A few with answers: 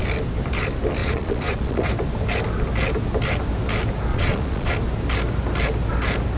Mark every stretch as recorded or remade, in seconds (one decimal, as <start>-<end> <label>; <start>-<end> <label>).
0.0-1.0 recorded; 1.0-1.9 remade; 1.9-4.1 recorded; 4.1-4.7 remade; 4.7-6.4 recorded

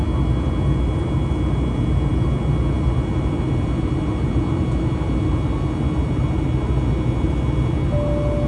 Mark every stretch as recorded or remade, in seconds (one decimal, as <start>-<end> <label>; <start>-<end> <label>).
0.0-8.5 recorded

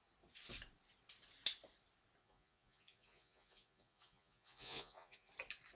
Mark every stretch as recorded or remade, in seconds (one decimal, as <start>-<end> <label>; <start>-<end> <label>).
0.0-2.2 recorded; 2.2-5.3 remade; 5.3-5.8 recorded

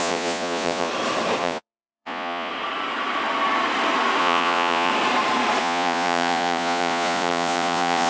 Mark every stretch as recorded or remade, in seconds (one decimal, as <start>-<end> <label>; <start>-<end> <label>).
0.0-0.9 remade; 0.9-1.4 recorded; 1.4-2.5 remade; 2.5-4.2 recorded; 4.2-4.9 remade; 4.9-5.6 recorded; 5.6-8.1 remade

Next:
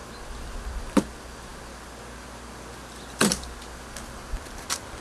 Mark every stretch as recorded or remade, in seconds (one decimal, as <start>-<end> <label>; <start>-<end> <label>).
0.0-5.0 recorded

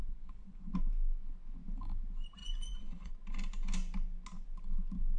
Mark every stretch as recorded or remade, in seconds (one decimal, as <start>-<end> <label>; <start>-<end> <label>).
0.0-0.7 remade; 0.7-2.4 recorded; 2.4-3.1 remade; 3.1-5.2 recorded